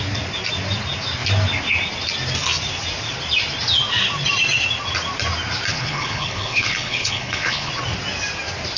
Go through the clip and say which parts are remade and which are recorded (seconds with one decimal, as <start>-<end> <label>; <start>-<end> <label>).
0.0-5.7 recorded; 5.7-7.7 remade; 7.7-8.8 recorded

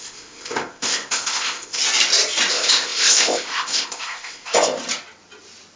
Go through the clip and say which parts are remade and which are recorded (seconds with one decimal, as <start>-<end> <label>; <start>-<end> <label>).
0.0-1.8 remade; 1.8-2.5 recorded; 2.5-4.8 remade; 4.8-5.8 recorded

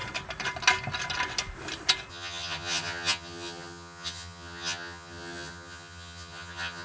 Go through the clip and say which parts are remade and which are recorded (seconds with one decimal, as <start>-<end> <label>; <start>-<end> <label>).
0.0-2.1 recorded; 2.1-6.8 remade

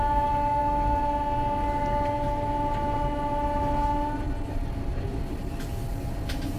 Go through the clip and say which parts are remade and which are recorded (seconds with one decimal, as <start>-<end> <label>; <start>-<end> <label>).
0.0-6.6 recorded

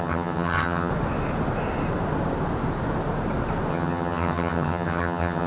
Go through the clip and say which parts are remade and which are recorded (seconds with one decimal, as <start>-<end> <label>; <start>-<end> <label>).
0.0-0.9 remade; 0.9-3.7 recorded; 3.7-5.5 remade

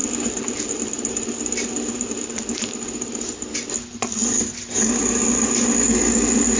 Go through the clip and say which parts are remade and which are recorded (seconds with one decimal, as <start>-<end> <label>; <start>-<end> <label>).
0.0-6.6 recorded